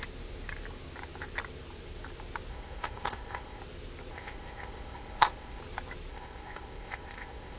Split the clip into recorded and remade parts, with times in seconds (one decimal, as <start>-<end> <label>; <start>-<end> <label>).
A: 0.0-2.5 recorded; 2.5-3.6 remade; 3.6-4.1 recorded; 4.1-5.6 remade; 5.6-6.1 recorded; 6.1-7.6 remade